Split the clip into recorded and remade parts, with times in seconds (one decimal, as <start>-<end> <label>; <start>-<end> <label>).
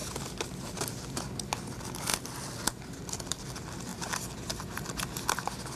0.0-1.2 remade; 1.2-3.9 recorded; 3.9-4.8 remade; 4.8-5.8 recorded